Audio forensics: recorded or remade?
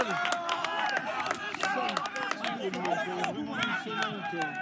recorded